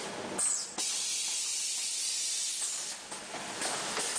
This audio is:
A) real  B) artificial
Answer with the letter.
A